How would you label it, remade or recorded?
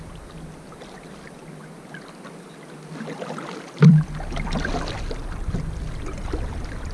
recorded